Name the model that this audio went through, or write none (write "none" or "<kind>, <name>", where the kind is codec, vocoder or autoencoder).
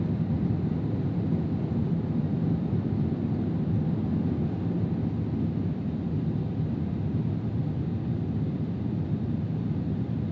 none